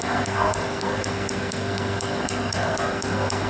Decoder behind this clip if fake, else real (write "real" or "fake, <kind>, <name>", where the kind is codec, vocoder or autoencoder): fake, codec, SNAC